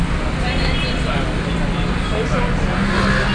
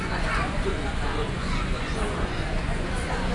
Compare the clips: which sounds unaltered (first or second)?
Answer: first